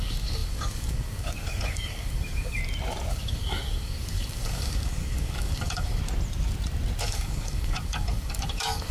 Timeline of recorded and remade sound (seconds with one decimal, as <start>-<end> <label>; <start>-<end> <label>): 0.0-2.6 remade; 2.6-3.1 recorded; 3.1-6.0 remade; 6.0-7.0 recorded; 7.0-8.9 remade